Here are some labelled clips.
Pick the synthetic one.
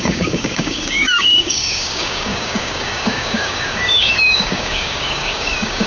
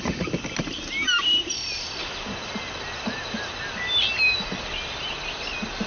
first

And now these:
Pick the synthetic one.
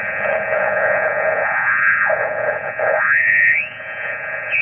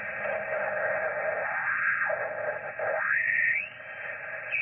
first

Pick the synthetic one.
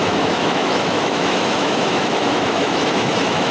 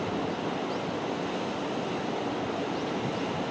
first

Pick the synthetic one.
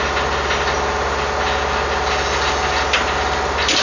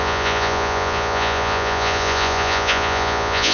second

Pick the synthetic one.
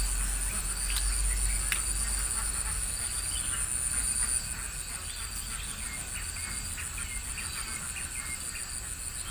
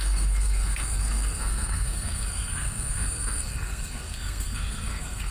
second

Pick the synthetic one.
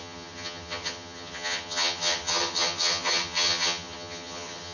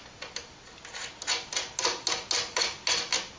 first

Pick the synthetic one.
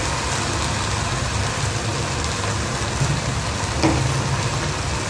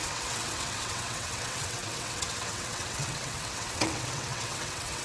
second